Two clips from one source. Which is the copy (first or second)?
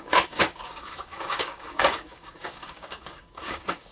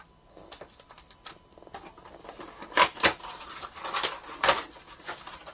first